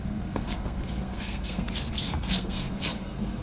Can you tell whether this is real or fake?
fake